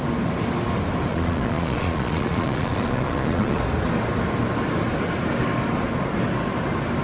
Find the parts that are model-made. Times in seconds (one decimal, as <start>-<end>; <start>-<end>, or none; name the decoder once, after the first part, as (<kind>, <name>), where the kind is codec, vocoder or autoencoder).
1.1-3.6 (vocoder, Vocos)